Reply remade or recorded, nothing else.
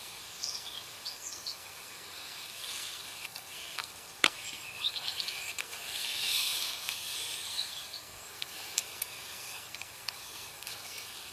remade